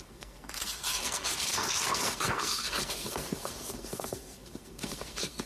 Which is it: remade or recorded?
remade